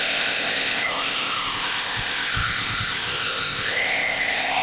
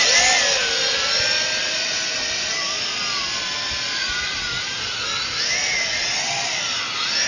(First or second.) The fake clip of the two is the first